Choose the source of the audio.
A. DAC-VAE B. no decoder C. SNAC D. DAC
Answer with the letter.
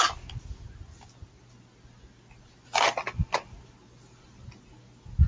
B